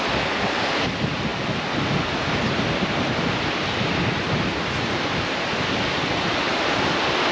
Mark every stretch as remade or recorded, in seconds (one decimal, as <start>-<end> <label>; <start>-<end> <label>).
0.0-7.3 recorded